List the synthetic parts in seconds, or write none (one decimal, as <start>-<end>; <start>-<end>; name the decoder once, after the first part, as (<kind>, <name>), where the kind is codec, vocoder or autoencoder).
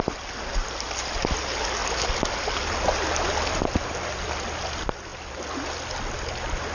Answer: none